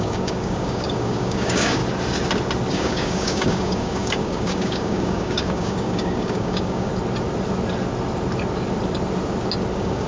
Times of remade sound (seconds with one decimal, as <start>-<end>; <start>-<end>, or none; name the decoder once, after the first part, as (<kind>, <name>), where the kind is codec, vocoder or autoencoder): 0.0-1.8 (codec, DAC); 2.7-6.9; 9.7-10.1

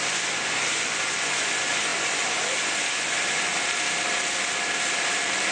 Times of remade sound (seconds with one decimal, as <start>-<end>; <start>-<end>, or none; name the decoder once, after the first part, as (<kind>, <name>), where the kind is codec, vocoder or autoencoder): 0.0-3.5 (vocoder, Vocos)

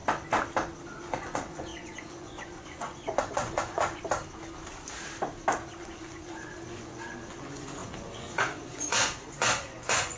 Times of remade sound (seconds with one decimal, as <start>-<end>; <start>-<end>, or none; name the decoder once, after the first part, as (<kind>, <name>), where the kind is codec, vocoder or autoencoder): 1.0-4.0 (vocoder, Vocos); 5.8-10.2